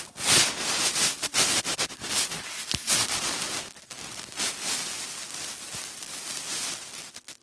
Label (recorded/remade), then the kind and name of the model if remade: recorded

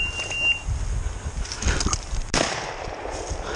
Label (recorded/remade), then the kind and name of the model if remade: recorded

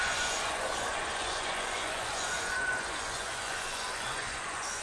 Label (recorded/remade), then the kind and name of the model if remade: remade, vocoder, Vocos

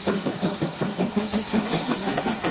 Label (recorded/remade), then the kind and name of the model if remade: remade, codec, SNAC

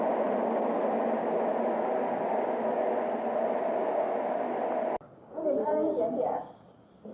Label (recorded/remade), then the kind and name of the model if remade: recorded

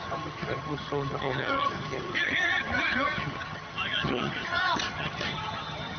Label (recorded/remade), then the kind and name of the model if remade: remade, vocoder, HiFi-GAN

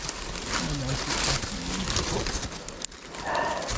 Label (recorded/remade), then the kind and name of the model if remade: recorded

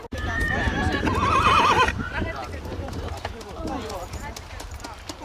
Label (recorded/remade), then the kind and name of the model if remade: remade, vocoder, BigVGAN v2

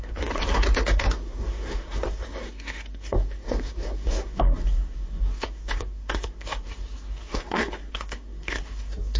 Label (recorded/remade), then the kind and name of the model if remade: remade, codec, SNAC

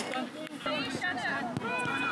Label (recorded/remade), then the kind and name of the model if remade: recorded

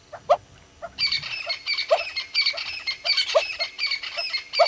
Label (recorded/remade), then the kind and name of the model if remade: recorded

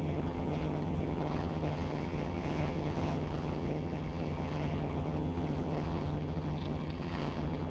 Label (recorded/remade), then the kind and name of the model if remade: remade, vocoder, HiFi-GAN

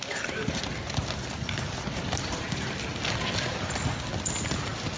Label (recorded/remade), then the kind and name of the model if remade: recorded